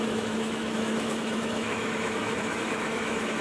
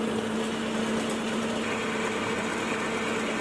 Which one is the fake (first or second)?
first